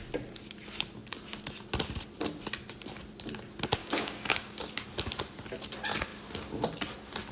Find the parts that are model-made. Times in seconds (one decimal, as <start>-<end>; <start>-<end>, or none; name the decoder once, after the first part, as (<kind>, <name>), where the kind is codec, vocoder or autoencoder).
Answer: 3.8-4.7 (codec, DAC)